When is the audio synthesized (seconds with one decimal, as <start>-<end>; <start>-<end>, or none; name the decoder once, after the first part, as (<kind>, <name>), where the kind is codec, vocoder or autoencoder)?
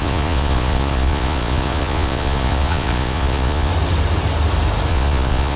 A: 0.0-3.7 (vocoder, Vocos); 4.9-5.6